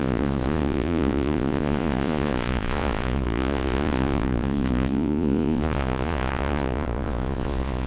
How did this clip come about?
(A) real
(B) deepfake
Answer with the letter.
B